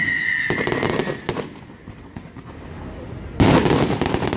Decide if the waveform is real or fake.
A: real